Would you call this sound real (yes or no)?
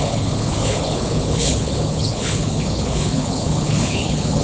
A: no